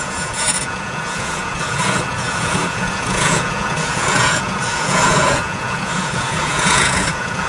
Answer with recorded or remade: remade